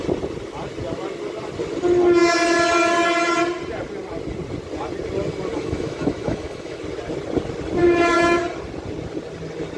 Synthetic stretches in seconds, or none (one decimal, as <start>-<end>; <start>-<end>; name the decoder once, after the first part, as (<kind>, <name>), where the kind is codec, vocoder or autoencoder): 5.5-6.8 (autoencoder, DAC-VAE); 7.8-8.4